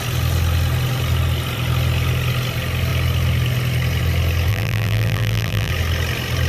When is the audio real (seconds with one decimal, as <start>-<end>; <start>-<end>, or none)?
0.0-4.5; 5.7-6.5